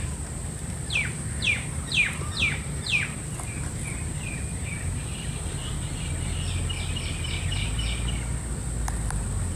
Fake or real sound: real